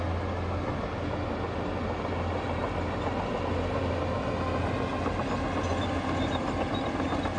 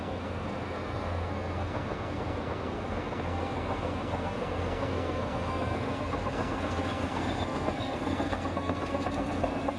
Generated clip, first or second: second